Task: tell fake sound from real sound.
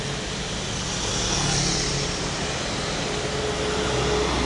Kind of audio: real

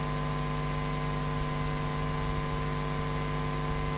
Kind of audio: real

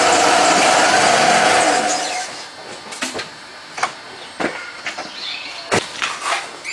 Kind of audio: fake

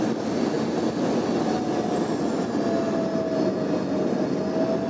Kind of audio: real